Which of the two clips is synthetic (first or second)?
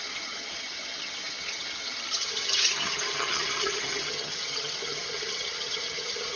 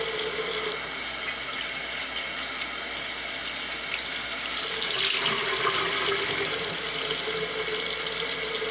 first